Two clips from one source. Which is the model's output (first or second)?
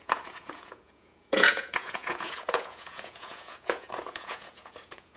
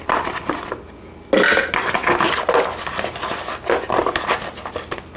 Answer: first